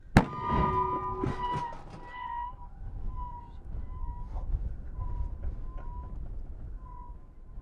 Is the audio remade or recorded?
recorded